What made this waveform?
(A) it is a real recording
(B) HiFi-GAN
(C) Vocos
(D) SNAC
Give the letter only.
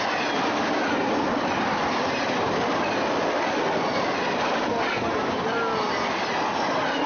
A